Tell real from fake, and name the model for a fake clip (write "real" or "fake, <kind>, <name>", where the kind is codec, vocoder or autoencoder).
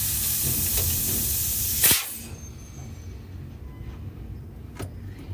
real